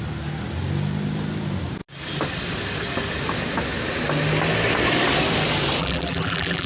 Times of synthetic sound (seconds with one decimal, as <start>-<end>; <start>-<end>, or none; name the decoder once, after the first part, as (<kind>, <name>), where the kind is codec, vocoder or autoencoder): 5.8-6.7 (vocoder, BigVGAN v2)